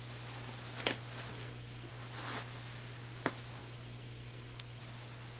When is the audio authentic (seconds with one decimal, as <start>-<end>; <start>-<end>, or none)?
0.0-1.3; 1.9-3.6; 4.8-5.4

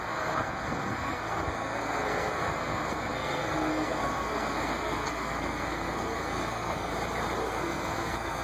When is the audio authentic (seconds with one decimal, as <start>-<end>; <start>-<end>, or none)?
6.9-7.4

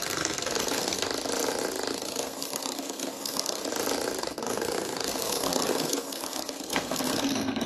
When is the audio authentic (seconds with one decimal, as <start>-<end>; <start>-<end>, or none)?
1.0-1.9; 3.6-4.2

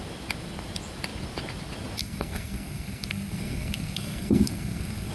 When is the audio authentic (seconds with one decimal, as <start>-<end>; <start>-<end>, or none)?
0.0-2.0

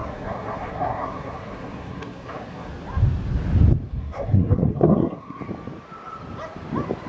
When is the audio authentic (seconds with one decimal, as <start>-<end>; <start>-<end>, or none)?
2.7-3.9; 5.4-7.1

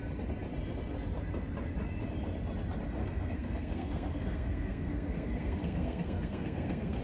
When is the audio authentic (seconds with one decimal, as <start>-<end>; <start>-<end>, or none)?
0.0-3.0

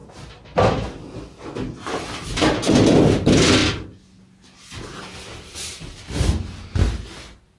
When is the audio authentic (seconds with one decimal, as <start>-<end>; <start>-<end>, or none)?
0.0-7.6

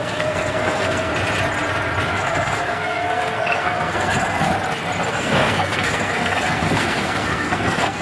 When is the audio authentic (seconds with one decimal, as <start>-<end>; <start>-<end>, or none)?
1.1-2.1; 4.5-5.1